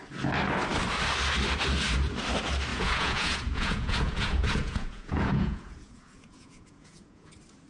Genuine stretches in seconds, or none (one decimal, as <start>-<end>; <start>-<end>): 0.0-2.7; 7.3-7.7